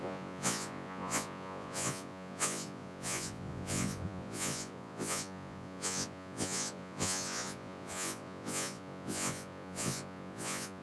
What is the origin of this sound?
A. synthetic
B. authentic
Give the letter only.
A